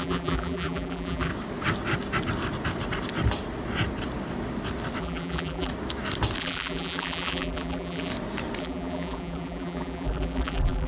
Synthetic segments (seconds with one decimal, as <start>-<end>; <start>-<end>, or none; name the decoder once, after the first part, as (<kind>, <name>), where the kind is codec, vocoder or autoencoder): 0.0-1.3 (vocoder, BigVGAN v2); 5.0-5.7; 6.4-8.1; 8.6-10.9